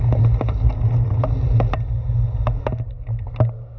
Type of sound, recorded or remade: recorded